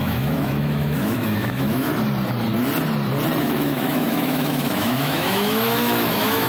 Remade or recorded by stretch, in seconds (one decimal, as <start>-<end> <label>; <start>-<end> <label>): 0.0-1.9 remade; 1.9-3.4 recorded; 3.4-6.5 remade